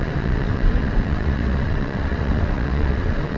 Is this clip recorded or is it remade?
remade